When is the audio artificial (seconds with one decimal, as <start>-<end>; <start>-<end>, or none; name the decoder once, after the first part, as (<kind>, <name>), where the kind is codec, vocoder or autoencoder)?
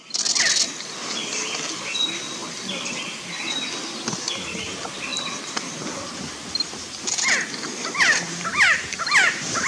none